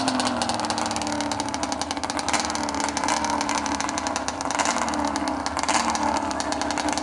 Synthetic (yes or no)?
no